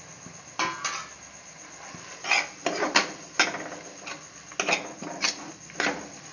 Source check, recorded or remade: recorded